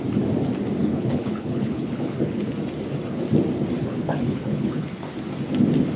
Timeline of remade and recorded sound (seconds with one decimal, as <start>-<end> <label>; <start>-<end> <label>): 0.0-0.8 recorded; 0.8-2.5 remade; 2.5-3.8 recorded; 3.8-4.9 remade; 4.9-6.0 recorded